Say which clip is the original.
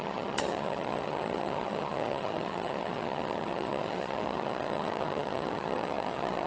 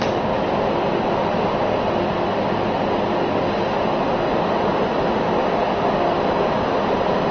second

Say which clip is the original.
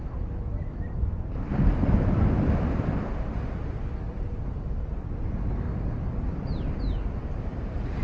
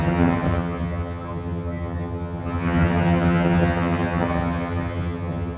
first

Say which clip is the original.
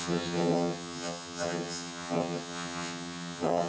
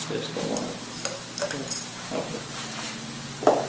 second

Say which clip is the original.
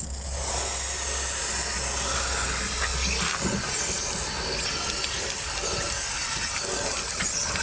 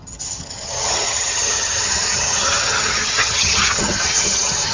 first